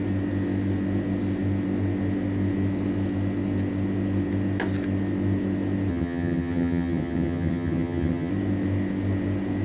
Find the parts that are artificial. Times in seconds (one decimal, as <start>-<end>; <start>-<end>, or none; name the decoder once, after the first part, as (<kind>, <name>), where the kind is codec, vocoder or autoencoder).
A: 5.9-8.3 (vocoder, HiFi-GAN)